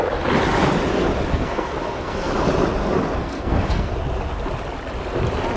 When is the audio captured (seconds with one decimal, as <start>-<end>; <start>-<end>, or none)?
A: 0.0-1.3; 2.3-3.2; 3.9-5.6